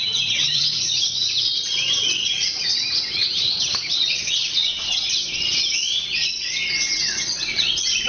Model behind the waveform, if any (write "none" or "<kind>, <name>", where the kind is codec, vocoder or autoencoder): vocoder, WaveNeXt